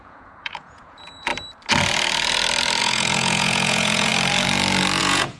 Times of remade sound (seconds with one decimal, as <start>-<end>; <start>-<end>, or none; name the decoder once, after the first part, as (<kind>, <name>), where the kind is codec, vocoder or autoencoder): 0.0-1.3 (vocoder, Vocos); 2.8-4.1; 5.0-5.4